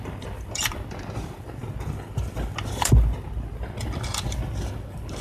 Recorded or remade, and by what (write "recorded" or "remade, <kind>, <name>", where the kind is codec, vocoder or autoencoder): remade, vocoder, BigVGAN v2